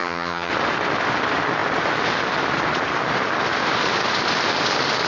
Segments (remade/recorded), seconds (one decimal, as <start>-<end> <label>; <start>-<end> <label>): 0.0-0.5 remade; 0.5-5.1 recorded